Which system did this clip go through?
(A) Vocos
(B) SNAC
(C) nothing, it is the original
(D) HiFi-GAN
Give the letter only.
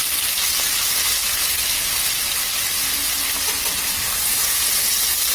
C